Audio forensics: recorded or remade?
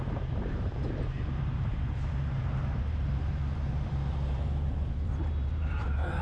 remade